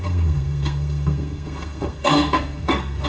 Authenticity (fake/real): fake